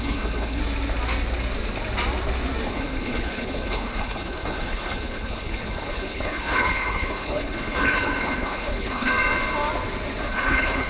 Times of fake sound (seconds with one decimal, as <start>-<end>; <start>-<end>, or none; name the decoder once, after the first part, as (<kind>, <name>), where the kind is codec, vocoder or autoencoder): 0.0-0.6 (codec, HILCodec); 2.7-9.1; 10.3-10.9